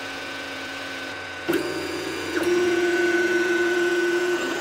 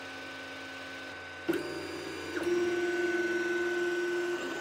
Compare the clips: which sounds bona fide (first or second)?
second